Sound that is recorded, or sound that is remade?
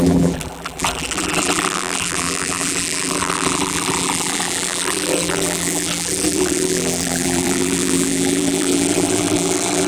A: remade